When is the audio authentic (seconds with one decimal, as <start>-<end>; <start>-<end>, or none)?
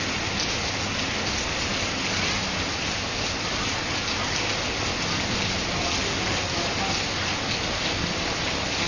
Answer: 0.0-8.9